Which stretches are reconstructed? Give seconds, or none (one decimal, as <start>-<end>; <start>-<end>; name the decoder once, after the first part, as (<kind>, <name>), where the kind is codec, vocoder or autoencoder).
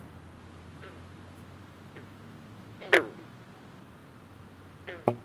none